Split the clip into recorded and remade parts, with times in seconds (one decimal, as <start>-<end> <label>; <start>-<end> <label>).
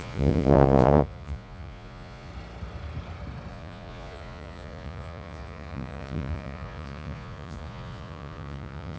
0.0-2.3 remade; 2.3-3.5 recorded; 3.5-9.0 remade